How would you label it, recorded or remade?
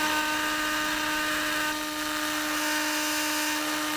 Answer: recorded